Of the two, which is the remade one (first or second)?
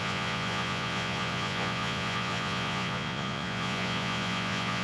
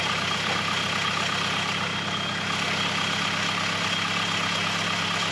first